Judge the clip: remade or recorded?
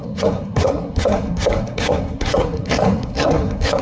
remade